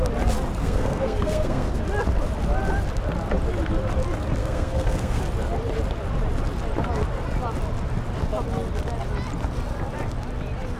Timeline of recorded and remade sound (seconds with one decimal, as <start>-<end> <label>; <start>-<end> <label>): 0.0-0.6 recorded; 0.6-1.8 remade; 1.8-4.4 recorded; 4.4-5.2 remade; 5.2-10.8 recorded

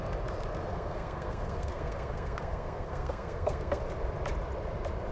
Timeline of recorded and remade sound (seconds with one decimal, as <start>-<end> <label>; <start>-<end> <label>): 0.0-0.7 recorded; 0.7-3.8 remade; 3.8-5.1 recorded

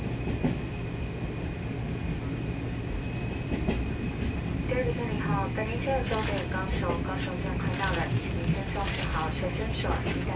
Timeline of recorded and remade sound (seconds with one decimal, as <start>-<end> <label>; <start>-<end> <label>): 0.0-10.4 recorded

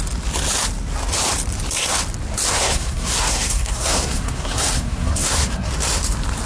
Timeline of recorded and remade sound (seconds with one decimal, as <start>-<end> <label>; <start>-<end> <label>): 0.0-2.5 recorded; 2.5-5.7 remade; 5.7-6.5 recorded